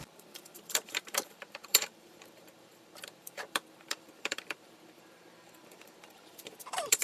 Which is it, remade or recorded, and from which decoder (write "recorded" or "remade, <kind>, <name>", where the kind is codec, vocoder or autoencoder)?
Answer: remade, vocoder, BigVGAN v2